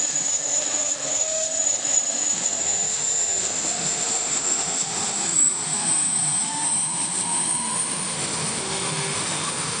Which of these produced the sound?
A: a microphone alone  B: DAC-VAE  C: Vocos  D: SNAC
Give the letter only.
B